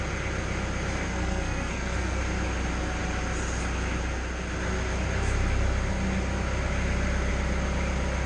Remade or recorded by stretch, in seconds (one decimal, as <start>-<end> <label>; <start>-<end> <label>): 0.0-1.1 recorded; 1.1-2.2 remade; 2.2-8.3 recorded